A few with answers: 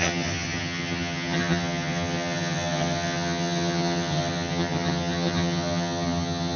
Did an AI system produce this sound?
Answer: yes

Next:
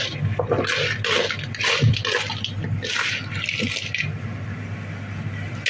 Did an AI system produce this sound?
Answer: no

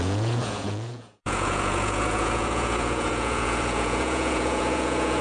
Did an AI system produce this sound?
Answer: yes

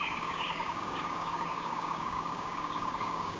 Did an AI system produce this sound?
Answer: yes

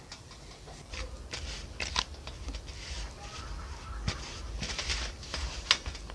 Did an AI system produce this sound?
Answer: no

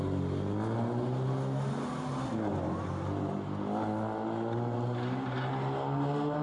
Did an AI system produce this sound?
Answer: no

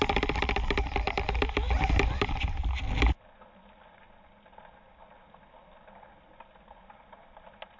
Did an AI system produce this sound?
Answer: no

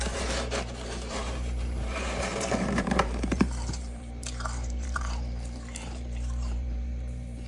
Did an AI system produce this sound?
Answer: yes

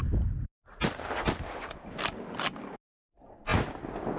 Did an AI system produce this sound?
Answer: no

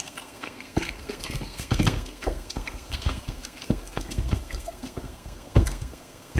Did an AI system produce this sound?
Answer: yes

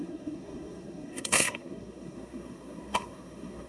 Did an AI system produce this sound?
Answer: yes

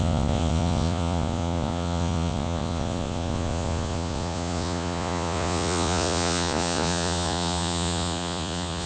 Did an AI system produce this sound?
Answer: yes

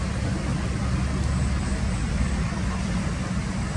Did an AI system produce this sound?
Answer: no